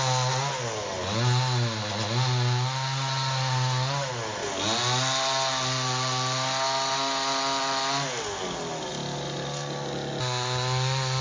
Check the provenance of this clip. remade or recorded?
recorded